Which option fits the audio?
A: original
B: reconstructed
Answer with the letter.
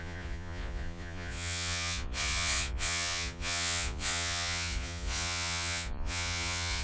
B